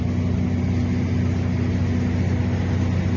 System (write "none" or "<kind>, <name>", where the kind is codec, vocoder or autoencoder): none